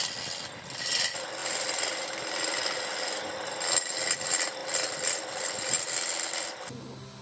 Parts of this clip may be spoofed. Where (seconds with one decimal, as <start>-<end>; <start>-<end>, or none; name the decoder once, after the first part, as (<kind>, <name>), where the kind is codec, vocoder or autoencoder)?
none

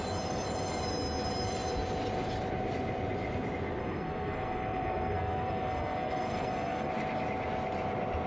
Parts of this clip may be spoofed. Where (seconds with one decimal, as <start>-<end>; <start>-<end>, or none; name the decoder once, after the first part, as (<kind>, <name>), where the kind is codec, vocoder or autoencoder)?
3.8-6.9 (codec, SNAC)